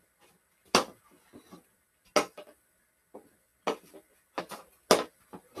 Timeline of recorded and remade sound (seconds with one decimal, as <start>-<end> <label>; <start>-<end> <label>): 0.0-5.6 recorded